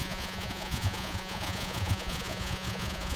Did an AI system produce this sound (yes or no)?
yes